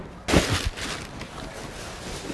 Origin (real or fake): real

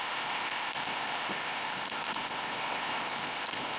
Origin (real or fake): fake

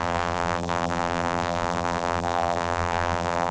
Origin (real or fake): fake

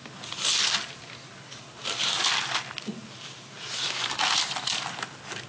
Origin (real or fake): real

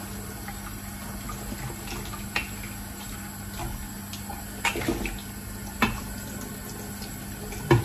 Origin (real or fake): real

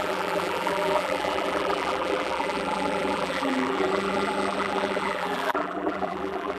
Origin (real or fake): fake